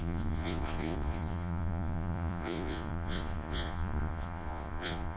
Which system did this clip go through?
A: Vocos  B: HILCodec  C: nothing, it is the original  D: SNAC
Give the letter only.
A